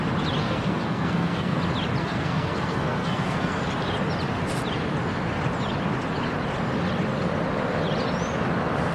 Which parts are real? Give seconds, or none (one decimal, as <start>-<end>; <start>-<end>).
0.0-0.4; 1.6-2.0; 3.6-8.9